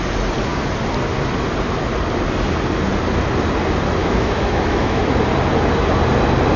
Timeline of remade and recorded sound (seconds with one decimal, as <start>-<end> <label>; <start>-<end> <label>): 0.0-4.0 recorded; 4.0-5.0 remade; 5.0-6.6 recorded